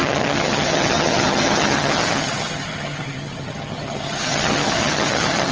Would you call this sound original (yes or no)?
no